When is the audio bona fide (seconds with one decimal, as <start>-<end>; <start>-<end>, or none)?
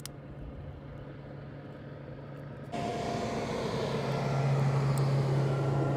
0.0-6.0